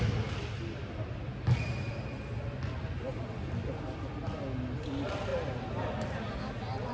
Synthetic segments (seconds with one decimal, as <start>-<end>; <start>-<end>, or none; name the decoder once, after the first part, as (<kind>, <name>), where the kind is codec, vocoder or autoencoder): none